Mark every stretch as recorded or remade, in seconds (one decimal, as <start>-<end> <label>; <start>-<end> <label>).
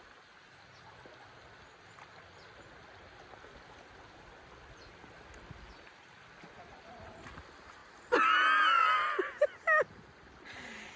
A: 0.0-11.0 recorded